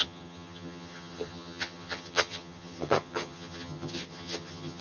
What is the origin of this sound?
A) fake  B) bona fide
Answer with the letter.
A